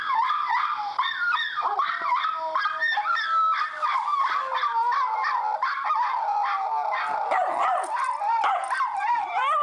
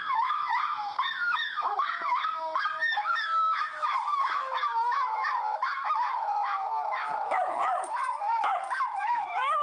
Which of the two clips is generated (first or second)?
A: second